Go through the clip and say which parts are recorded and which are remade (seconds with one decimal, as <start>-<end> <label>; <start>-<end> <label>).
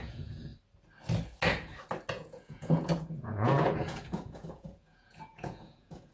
0.0-0.5 remade; 0.5-2.1 recorded; 2.1-6.1 remade